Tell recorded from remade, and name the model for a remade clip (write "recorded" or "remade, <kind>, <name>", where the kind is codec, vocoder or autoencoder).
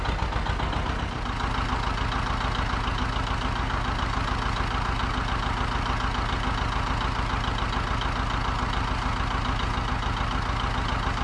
recorded